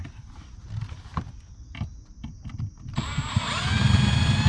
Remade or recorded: recorded